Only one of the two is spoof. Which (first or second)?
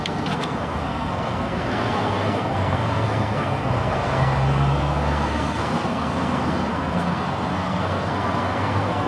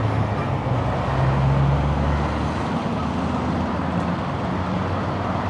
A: first